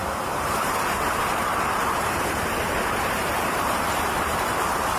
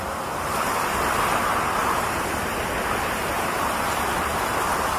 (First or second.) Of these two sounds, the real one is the second